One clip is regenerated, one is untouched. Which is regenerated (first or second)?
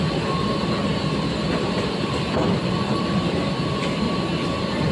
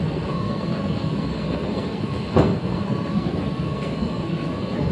second